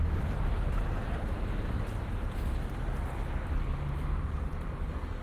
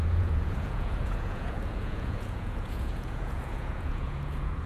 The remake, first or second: second